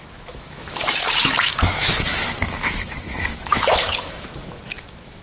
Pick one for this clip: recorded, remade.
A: remade